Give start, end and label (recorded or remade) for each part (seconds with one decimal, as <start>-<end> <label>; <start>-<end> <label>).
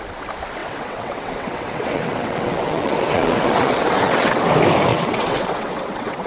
0.0-0.6 recorded; 0.6-4.4 remade; 4.4-4.9 recorded; 4.9-6.3 remade